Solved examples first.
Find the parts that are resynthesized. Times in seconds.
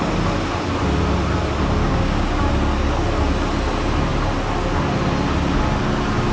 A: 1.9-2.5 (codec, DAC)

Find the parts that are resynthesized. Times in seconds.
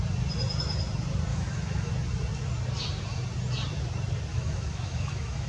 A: 1.3-1.9 (autoencoder, DAC-VAE); 4.3-5.5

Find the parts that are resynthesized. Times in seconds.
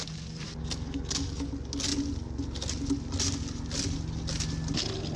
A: 0.6-1.5 (codec, DAC)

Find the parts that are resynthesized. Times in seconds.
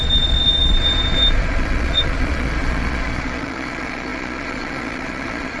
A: 0.0-5.6 (vocoder, Vocos)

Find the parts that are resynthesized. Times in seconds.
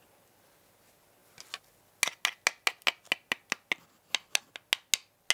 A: none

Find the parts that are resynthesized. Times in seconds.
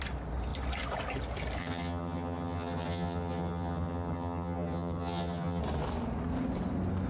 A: 1.6-5.6 (vocoder, HiFi-GAN)